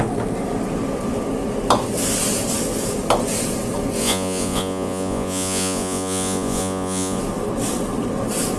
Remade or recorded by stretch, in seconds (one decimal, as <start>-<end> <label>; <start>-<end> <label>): 0.0-4.0 recorded; 4.0-7.2 remade; 7.2-8.6 recorded